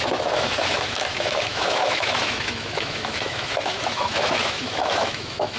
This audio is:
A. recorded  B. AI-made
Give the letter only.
B